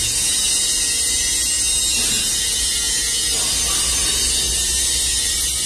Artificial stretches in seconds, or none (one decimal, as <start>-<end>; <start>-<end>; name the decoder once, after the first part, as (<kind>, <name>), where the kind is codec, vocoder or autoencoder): none